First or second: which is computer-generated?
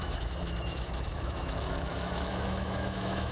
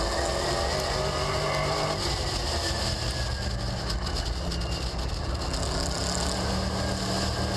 first